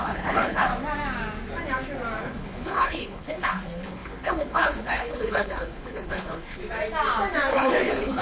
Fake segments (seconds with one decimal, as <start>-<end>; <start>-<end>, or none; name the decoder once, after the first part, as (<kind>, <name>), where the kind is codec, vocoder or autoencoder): 0.0-0.7 (codec, HILCodec); 2.2-6.6; 7.5-8.2